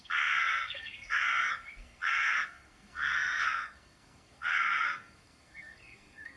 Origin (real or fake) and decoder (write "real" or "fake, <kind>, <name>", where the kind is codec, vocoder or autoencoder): fake, codec, SNAC